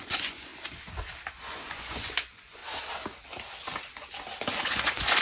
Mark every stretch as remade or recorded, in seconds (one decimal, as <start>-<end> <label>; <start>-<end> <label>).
0.0-0.5 remade; 0.5-1.3 recorded; 1.3-2.6 remade; 2.6-4.5 recorded; 4.5-5.2 remade